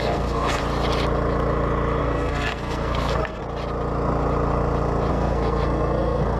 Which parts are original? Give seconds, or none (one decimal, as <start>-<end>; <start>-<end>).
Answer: 0.6-2.0; 3.4-5.1